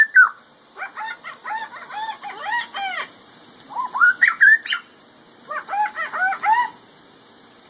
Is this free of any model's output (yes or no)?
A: yes